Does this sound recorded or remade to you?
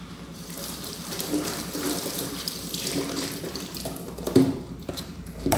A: remade